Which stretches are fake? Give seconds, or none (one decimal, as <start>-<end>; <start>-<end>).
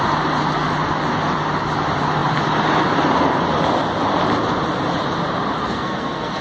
5.6-6.4